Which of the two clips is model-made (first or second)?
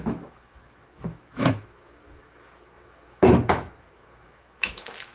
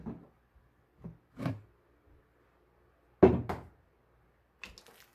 first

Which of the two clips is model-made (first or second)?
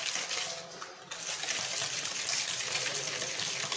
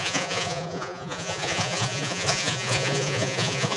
second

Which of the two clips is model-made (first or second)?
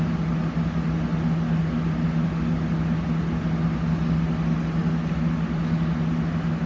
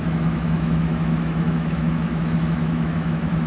second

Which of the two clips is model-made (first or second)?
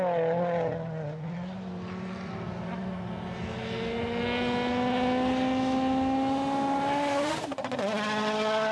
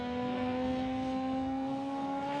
second